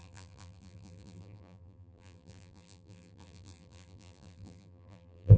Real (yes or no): no